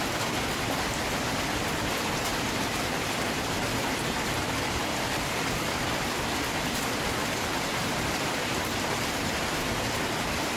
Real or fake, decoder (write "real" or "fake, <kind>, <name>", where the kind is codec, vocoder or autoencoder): fake, vocoder, BigVGAN v2